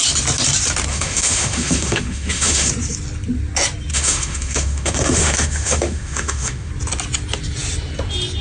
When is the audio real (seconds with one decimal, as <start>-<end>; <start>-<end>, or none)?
0.0-0.9; 2.7-3.9; 6.7-8.4